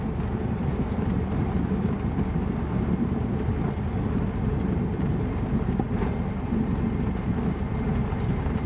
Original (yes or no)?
yes